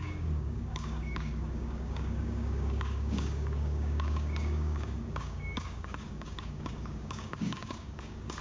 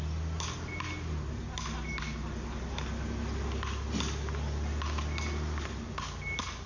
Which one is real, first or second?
second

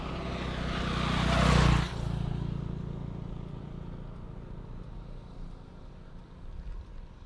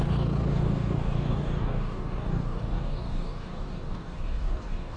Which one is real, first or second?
first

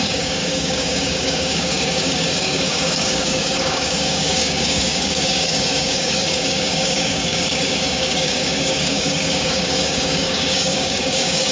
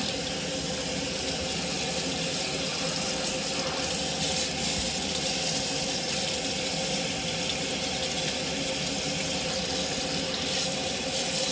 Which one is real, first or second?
second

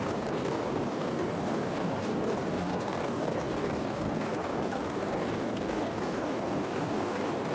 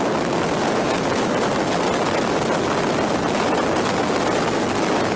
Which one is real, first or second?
second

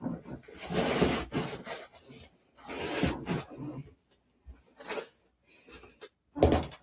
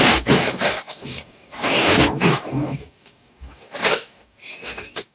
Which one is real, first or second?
first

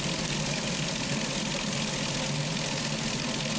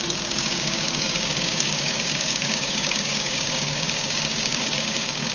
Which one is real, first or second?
first